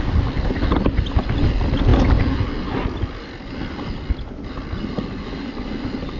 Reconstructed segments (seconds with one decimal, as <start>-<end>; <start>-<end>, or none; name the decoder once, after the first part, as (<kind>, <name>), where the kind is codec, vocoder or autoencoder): none